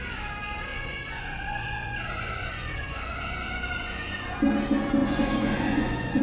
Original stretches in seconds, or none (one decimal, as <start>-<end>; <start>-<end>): 0.0-0.7; 4.4-5.0